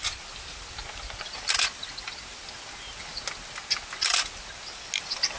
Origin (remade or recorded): recorded